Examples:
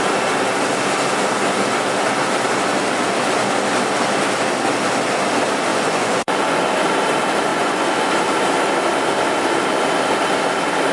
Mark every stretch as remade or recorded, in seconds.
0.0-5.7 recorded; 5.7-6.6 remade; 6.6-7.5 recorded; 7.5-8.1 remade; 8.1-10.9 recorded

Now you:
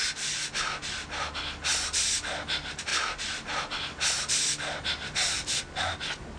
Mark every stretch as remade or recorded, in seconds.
0.0-6.4 recorded

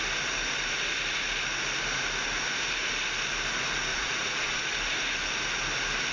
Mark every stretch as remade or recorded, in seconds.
0.0-3.9 recorded; 3.9-4.6 remade; 4.6-6.1 recorded

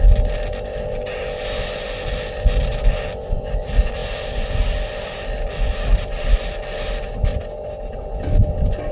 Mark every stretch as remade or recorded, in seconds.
0.0-8.9 recorded

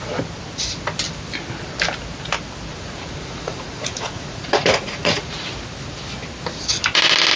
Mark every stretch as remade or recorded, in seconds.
0.0-2.7 recorded; 2.7-5.5 remade; 5.5-7.4 recorded

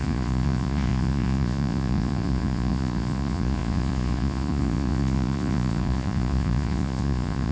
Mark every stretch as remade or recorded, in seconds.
0.0-7.5 remade

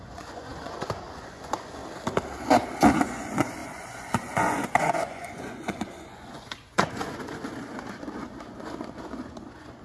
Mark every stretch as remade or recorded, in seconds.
0.0-1.8 remade; 1.8-2.9 recorded; 2.9-9.8 remade

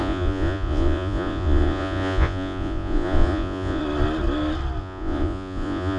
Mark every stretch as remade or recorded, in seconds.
0.0-3.8 remade; 3.8-4.8 recorded; 4.8-6.0 remade